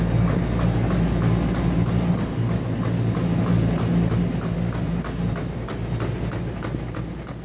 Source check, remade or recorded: recorded